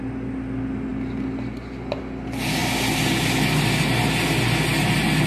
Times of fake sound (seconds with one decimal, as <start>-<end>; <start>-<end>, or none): none